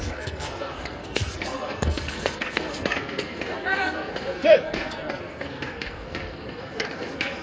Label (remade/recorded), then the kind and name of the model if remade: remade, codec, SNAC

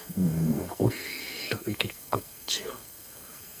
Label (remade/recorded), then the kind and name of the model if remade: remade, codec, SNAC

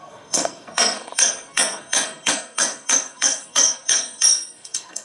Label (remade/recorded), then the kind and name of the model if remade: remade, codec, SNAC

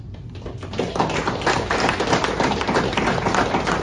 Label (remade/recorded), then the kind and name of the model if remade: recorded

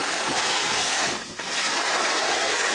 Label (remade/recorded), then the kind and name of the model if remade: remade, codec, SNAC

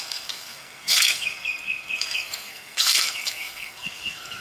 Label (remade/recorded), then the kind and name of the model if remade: remade, codec, SNAC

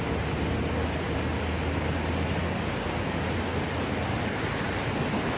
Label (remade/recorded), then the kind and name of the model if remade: recorded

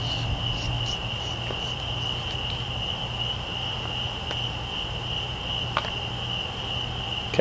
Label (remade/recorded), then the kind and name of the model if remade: recorded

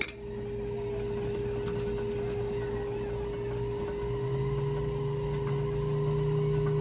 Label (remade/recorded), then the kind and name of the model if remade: recorded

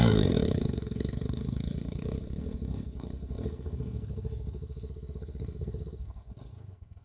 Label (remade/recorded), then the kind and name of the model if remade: remade, codec, SNAC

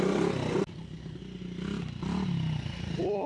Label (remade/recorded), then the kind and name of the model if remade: recorded